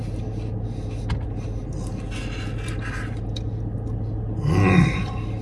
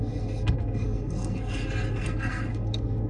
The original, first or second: first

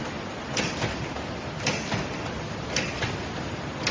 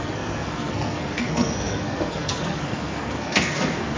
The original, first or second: first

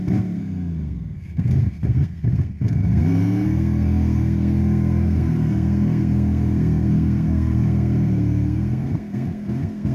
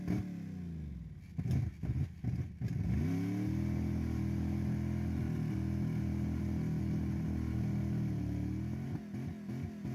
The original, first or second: second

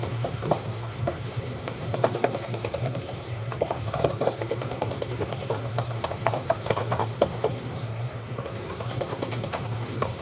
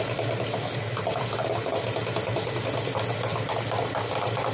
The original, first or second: second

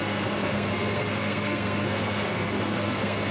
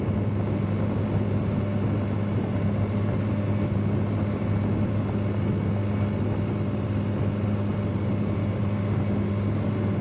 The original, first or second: second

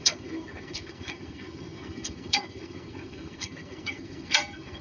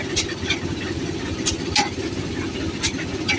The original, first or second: second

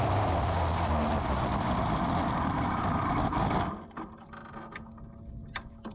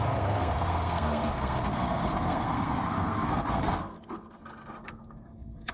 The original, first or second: first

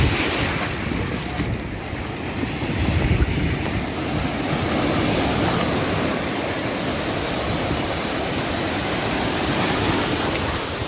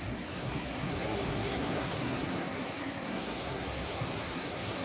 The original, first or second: first